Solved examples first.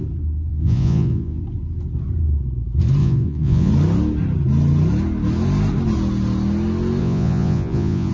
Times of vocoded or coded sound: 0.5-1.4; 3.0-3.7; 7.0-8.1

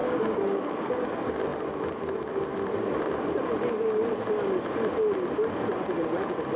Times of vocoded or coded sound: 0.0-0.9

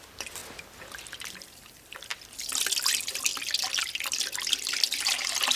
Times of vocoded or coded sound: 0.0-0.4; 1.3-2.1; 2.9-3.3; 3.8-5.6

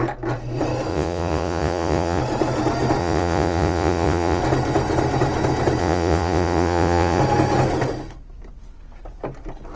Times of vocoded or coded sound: 0.9-2.2; 3.0-4.4; 5.8-7.2

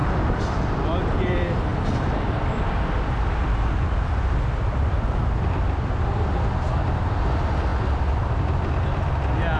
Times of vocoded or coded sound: 0.0-0.8; 1.7-6.3

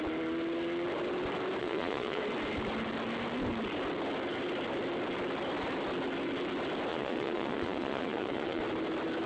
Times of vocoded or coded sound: 1.6-2.2; 6.9-8.6

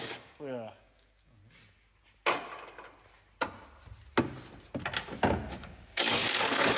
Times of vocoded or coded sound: 0.0-1.4; 5.5-6.8

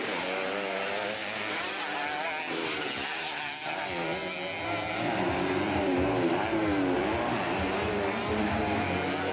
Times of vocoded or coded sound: none